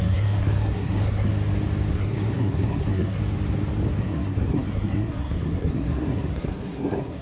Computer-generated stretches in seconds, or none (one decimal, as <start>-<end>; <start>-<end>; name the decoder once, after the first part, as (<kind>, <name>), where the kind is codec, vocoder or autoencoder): 0.0-1.3 (codec, SNAC); 1.9-3.2; 4.0-7.2